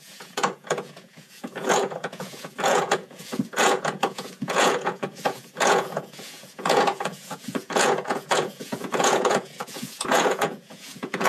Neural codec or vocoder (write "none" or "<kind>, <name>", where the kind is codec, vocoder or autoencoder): vocoder, Vocos